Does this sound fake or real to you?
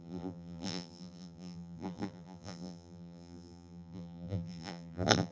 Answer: fake